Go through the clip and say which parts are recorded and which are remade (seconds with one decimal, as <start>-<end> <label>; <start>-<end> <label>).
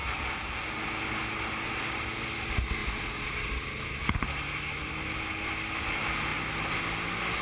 0.0-0.9 remade; 0.9-7.4 recorded